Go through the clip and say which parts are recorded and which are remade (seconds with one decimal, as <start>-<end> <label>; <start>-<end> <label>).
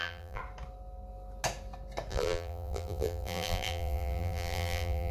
0.0-0.4 remade; 0.4-2.1 recorded; 2.1-5.1 remade